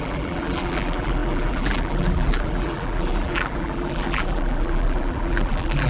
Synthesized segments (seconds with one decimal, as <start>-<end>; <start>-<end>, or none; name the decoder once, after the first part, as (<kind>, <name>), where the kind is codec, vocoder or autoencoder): 0.0-5.9 (vocoder, BigVGAN v2)